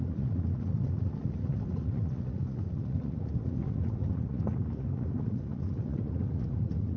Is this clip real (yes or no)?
no